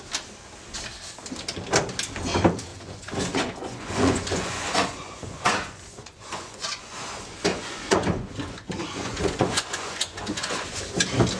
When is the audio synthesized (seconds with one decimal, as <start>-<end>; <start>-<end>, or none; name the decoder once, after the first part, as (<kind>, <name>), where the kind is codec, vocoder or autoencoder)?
2.7-7.0 (vocoder, Vocos); 7.5-10.8

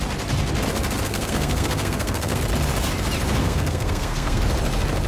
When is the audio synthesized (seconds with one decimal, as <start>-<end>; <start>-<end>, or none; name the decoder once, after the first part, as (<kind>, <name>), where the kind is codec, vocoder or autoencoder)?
1.1-2.4 (codec, SNAC); 3.4-4.4

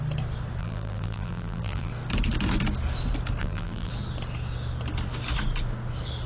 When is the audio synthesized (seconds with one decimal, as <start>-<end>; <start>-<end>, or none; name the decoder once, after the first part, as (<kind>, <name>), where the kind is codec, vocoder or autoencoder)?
0.6-1.9 (vocoder, BigVGAN v2); 3.4-3.9

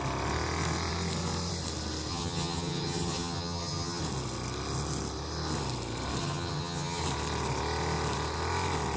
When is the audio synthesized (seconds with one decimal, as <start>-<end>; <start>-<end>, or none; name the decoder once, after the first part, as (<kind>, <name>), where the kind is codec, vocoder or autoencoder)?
2.1-4.0 (vocoder, HiFi-GAN); 6.2-7.0

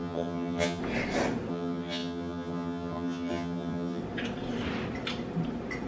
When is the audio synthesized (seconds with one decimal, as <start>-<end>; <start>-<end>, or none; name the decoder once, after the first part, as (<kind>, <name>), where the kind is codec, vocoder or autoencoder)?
0.0-0.8 (vocoder, HiFi-GAN); 1.5-4.0